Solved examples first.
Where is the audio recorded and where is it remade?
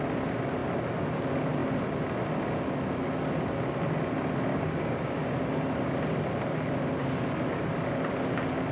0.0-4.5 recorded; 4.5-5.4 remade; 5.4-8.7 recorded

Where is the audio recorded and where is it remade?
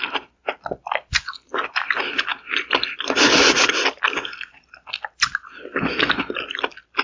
0.0-7.0 recorded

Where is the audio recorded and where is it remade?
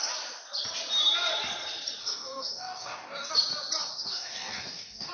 0.0-2.0 recorded; 2.0-3.3 remade; 3.3-3.9 recorded; 3.9-5.1 remade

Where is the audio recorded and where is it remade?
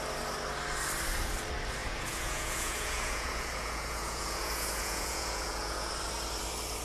0.0-1.8 recorded; 1.8-5.9 remade; 5.9-6.8 recorded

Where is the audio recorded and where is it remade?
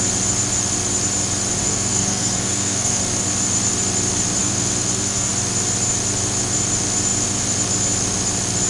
0.0-1.6 recorded; 1.6-3.0 remade; 3.0-4.4 recorded; 4.4-5.3 remade; 5.3-8.7 recorded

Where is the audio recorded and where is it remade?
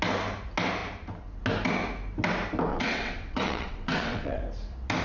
0.0-2.7 recorded; 2.7-4.4 remade; 4.4-5.0 recorded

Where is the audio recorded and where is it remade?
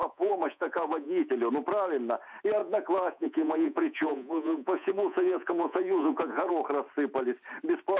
0.0-1.3 remade; 1.3-2.6 recorded; 2.6-6.5 remade; 6.5-8.0 recorded